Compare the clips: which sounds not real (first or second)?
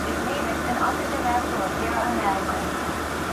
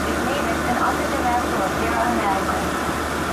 first